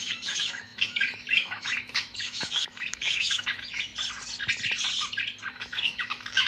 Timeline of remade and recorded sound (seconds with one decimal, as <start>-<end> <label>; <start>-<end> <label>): 0.0-3.9 remade; 3.9-5.5 recorded; 5.5-6.5 remade